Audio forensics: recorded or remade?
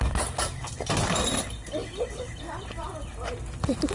recorded